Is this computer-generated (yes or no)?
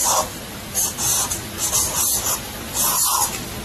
no